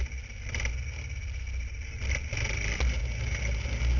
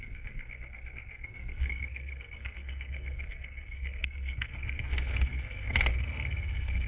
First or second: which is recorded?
first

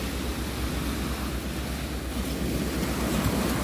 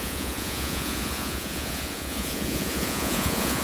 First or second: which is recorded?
first